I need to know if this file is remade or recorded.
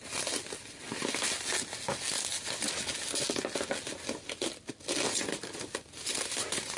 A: recorded